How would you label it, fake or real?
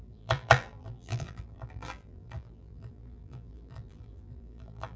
fake